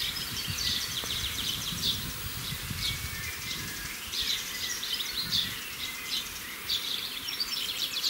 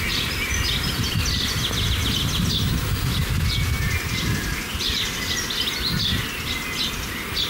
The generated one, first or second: first